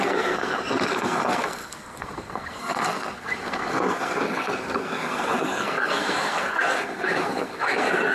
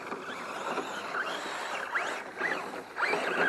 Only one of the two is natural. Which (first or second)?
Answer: second